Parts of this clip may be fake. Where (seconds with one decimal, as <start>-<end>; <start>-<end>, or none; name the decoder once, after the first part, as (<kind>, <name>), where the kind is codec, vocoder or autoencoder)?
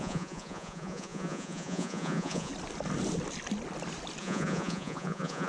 0.0-2.5 (vocoder, Vocos); 4.2-5.5